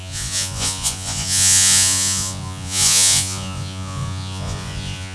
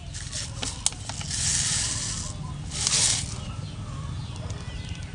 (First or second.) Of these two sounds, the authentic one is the second